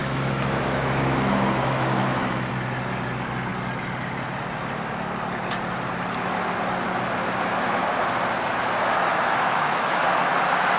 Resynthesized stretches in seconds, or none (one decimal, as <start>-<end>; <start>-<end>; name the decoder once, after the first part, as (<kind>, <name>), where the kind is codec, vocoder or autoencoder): 0.0-2.5 (autoencoder, DAC-VAE); 9.1-10.0